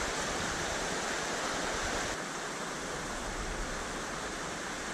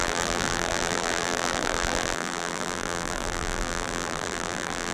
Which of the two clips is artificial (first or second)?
second